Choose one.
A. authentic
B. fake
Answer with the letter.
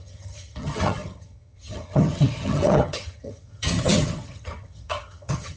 B